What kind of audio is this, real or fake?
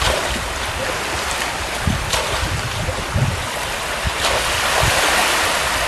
real